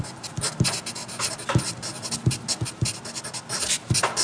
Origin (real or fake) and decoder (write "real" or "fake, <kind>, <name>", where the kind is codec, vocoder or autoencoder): real